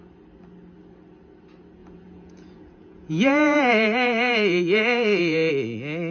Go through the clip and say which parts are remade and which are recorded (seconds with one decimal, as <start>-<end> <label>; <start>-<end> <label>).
0.0-1.8 recorded; 1.8-5.5 remade; 5.5-6.1 recorded